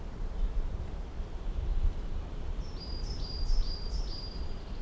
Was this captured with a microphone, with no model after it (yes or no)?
no